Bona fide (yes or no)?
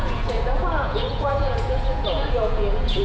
no